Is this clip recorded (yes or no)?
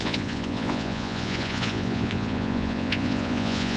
no